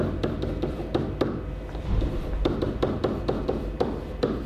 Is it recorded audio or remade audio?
remade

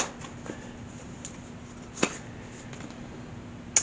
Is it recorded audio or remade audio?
recorded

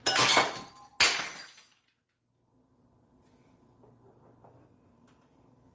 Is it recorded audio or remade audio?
recorded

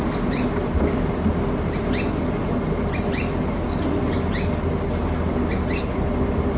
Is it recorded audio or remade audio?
recorded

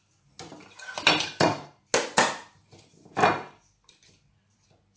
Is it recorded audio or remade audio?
recorded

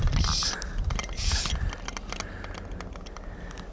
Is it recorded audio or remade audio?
recorded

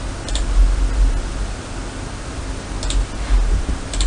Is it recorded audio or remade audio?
recorded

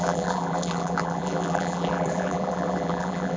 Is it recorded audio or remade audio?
remade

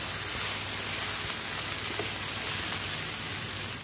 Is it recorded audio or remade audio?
recorded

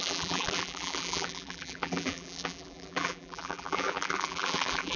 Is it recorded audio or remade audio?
remade